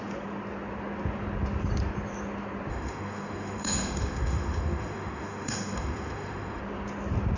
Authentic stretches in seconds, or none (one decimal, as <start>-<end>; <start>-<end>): 0.0-2.7; 6.6-7.4